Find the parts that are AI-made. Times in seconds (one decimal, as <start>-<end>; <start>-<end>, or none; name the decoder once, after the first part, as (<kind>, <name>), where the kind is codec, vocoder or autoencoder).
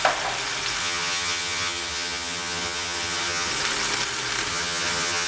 0.8-3.5 (vocoder, HiFi-GAN); 4.5-5.3